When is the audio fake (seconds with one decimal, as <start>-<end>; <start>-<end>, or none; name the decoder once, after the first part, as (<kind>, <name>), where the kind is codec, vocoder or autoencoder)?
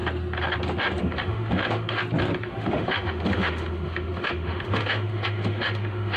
1.0-2.0 (autoencoder, DAC-VAE); 2.5-6.2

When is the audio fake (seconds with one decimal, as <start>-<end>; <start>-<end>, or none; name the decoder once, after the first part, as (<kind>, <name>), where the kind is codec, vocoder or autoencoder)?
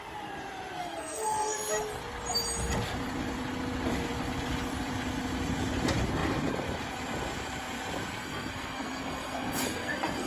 0.8-1.7 (codec, SNAC); 8.2-10.3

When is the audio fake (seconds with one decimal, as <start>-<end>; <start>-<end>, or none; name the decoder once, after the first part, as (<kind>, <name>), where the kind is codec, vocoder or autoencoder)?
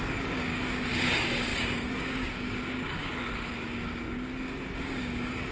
0.0-5.5 (codec, DAC)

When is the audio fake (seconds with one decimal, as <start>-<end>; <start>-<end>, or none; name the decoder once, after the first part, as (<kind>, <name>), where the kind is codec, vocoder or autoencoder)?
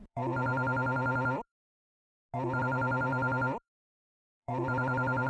0.0-0.5 (vocoder, BigVGAN v2); 2.6-3.1; 4.2-5.3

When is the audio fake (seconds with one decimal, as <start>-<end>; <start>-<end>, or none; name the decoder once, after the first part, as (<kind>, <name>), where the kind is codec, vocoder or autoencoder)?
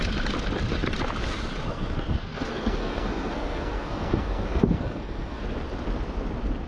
1.7-5.4 (codec, SNAC)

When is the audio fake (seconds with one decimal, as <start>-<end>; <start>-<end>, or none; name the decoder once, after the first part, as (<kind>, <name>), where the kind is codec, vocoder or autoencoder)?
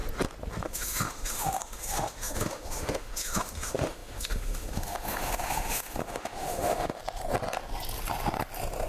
0.6-7.0 (autoencoder, DAC-VAE)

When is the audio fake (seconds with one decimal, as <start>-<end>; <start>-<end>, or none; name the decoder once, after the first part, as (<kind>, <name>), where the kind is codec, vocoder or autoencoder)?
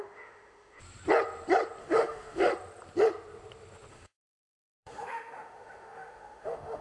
0.0-0.8 (autoencoder, DAC-VAE); 1.8-2.5; 3.9-6.8